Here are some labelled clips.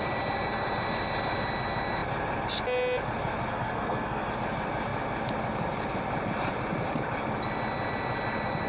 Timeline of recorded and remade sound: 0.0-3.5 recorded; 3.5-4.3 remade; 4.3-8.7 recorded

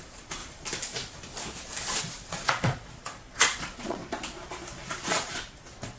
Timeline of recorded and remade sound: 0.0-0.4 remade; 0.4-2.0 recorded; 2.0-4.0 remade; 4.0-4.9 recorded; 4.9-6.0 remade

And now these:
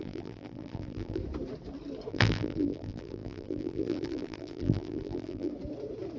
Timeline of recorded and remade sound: 0.0-1.2 remade; 1.2-2.1 recorded; 2.1-5.5 remade; 5.5-6.2 recorded

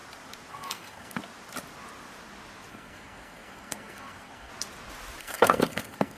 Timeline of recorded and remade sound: 0.0-0.5 recorded; 0.5-1.2 remade; 1.2-2.7 recorded; 2.7-4.5 remade; 4.5-5.2 recorded; 5.2-6.2 remade

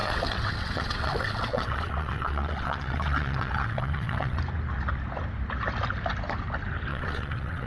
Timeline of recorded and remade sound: 0.0-4.4 remade; 4.4-6.9 recorded; 6.9-7.7 remade

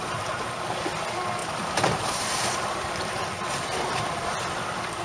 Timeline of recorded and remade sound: 0.0-1.4 recorded; 1.4-4.4 remade; 4.4-5.0 recorded

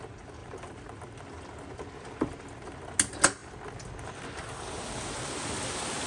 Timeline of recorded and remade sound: 0.0-0.4 recorded; 0.4-1.0 remade; 1.0-6.1 recorded

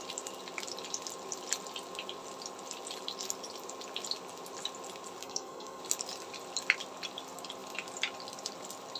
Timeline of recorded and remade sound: 0.0-5.2 recorded; 5.2-5.8 remade; 5.8-9.0 recorded